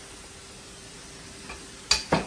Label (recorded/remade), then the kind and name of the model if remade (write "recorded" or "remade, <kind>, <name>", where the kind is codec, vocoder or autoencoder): recorded